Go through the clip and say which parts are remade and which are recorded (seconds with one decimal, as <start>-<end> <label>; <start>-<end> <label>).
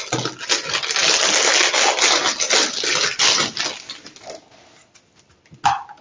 0.0-6.0 recorded